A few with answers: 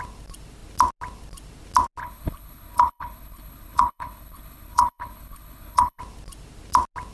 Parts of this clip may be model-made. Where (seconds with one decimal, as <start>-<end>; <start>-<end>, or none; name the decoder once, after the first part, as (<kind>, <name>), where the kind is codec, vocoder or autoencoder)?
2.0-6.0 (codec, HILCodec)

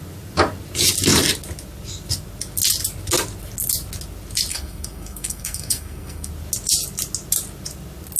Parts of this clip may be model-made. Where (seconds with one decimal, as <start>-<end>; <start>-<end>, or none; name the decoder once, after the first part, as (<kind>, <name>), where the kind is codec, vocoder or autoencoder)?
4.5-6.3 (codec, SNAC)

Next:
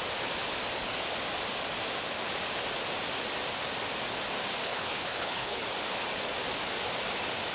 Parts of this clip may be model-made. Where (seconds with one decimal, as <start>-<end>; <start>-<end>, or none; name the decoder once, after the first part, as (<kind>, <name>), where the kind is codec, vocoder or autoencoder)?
4.6-5.6 (codec, HILCodec)